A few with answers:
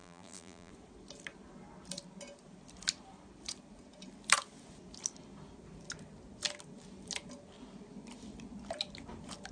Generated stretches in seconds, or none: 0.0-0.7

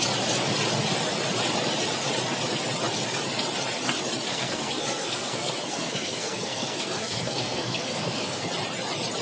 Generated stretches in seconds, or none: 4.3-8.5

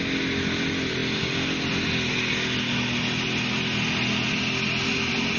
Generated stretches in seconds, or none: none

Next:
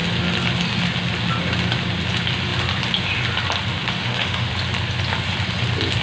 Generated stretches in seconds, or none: 4.0-4.5

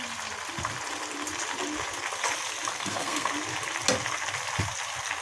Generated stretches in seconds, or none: 2.7-3.3

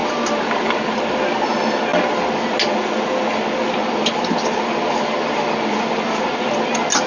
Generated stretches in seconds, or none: none